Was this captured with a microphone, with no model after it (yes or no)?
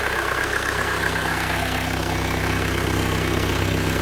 no